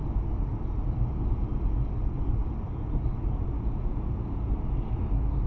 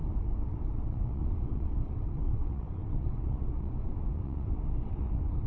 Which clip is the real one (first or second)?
first